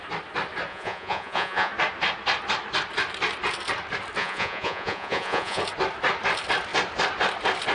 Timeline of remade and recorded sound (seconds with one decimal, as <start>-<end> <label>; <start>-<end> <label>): 0.0-0.7 recorded; 0.7-1.7 remade; 1.7-4.2 recorded; 4.2-5.6 remade; 5.6-7.7 recorded